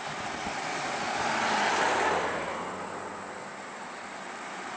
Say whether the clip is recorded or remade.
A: recorded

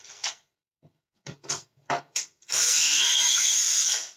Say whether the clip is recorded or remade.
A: remade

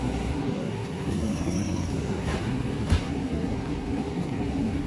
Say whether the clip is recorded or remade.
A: remade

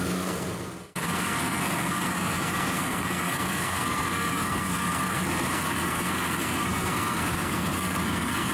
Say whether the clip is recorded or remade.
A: remade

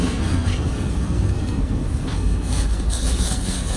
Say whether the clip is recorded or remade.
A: remade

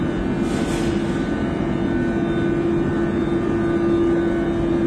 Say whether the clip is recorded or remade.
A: recorded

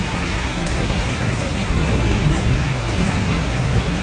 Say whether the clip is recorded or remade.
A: remade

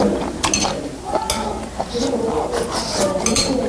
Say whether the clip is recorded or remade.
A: recorded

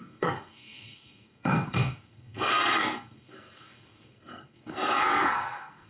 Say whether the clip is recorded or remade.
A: remade